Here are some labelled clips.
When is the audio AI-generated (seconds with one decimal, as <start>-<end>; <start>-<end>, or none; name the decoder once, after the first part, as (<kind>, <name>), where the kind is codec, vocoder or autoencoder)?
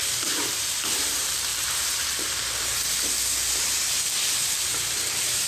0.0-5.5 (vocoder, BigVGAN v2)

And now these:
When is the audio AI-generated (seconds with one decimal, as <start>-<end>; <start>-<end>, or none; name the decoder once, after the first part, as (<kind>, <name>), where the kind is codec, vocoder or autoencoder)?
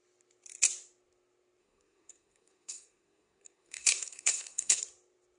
1.6-4.8 (codec, SNAC)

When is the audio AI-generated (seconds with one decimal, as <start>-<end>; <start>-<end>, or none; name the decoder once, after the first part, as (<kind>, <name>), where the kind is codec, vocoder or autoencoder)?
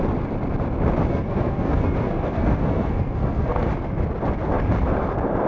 1.1-3.7 (codec, SNAC)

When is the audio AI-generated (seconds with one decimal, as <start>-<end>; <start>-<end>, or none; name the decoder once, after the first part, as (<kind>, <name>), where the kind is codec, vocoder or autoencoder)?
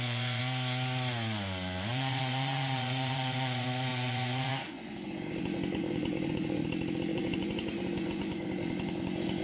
0.0-0.4 (vocoder, Vocos); 1.9-6.6; 7.1-9.4